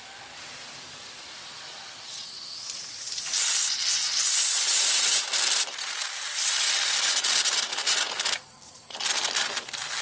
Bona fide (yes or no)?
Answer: yes